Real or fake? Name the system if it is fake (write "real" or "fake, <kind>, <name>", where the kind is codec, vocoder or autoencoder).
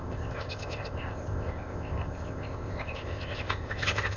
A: fake, codec, ZipCodec